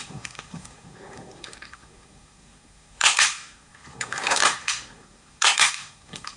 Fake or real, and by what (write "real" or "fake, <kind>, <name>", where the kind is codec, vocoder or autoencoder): fake, codec, SNAC